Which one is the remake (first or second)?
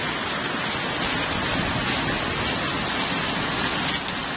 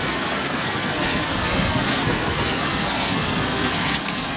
second